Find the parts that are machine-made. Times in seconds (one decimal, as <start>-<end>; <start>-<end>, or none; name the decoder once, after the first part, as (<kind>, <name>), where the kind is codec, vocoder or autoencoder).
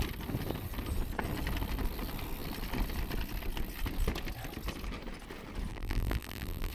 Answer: 5.7-6.7 (vocoder, BigVGAN v2)